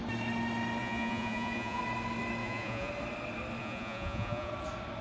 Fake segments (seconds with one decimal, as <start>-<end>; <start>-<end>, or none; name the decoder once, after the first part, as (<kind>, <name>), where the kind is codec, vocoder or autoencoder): 0.8-1.8 (vocoder, Vocos); 2.4-2.9; 3.6-4.5